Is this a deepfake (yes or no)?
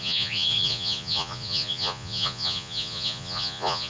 yes